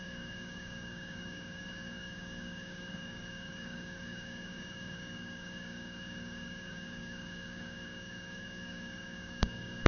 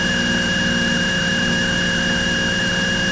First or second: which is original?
second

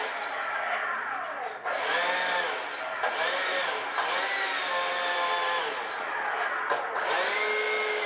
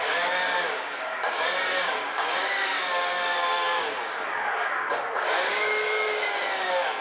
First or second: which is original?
first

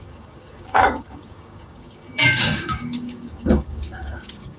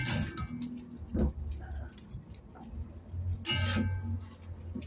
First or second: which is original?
second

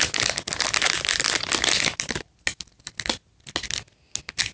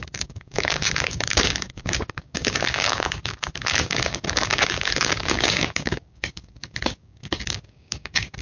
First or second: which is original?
first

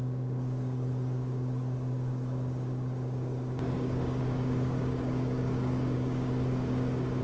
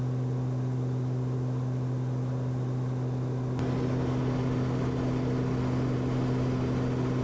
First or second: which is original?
second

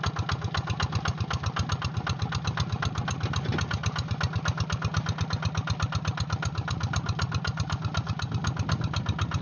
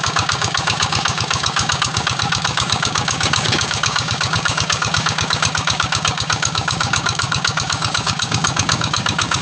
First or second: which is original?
first